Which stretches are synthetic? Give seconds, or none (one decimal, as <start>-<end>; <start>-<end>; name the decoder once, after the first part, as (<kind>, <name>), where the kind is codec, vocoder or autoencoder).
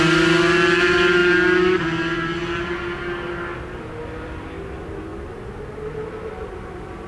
none